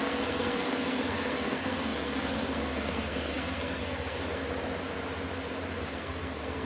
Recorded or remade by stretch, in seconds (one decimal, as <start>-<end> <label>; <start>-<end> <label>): 0.0-4.4 remade; 4.4-5.8 recorded; 5.8-6.7 remade

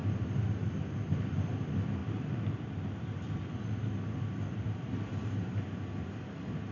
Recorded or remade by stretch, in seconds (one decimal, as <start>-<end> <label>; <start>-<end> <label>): 0.0-5.1 recorded; 5.1-5.8 remade; 5.8-6.7 recorded

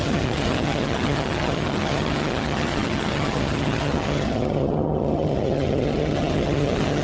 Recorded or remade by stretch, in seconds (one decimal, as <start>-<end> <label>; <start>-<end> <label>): 0.0-7.0 remade

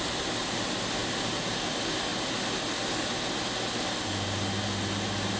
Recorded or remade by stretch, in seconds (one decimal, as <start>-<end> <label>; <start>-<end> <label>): 0.0-1.0 recorded; 1.0-1.7 remade; 1.7-5.4 recorded

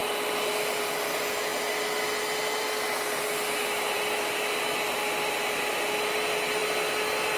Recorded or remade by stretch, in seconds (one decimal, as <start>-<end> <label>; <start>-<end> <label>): 0.0-7.4 recorded

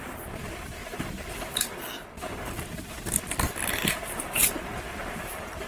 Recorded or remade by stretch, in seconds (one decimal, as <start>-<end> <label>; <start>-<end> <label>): 0.0-0.8 remade; 0.8-3.7 recorded; 3.7-4.4 remade; 4.4-4.9 recorded; 4.9-5.7 remade

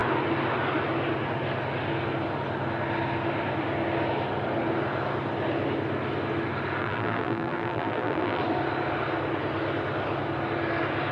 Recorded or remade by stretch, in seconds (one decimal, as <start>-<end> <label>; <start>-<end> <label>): 0.0-6.8 recorded; 6.8-8.4 remade; 8.4-11.1 recorded

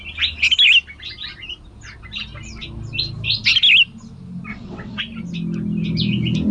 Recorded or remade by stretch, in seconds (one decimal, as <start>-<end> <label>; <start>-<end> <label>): 0.0-4.5 recorded; 4.5-5.0 remade; 5.0-6.5 recorded